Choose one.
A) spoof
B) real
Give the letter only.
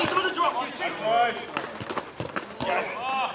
B